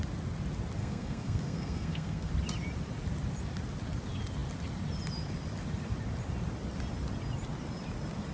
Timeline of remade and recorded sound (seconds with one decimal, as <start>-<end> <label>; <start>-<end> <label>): 0.0-0.8 recorded; 0.8-2.3 remade; 2.3-8.3 recorded